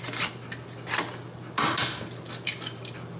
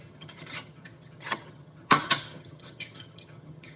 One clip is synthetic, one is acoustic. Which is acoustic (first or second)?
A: first